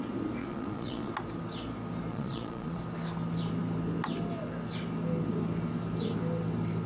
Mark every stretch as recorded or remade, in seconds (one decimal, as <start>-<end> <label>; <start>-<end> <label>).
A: 0.0-0.4 recorded; 0.4-1.1 remade; 1.1-2.1 recorded; 2.1-2.8 remade; 2.8-6.9 recorded